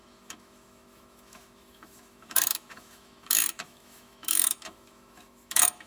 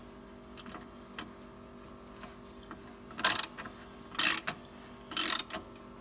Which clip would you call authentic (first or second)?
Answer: second